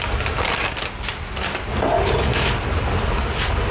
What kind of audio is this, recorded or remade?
recorded